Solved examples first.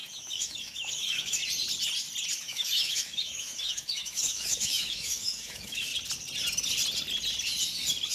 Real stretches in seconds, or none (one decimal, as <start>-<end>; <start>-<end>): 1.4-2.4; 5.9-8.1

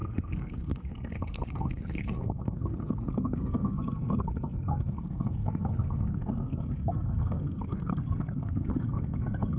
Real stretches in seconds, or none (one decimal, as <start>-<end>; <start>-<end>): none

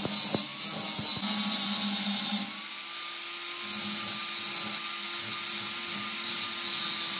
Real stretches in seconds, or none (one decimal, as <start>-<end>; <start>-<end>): 0.0-7.2

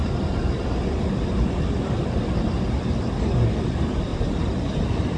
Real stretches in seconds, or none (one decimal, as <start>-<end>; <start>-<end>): 1.5-4.1

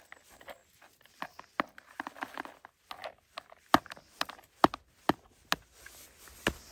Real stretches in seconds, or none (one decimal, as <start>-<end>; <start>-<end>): 0.0-6.7

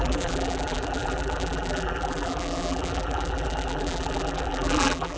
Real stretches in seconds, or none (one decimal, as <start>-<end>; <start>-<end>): none

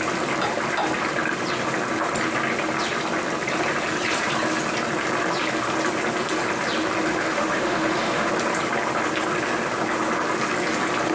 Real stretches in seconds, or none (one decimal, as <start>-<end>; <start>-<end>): 0.0-7.1; 8.3-11.1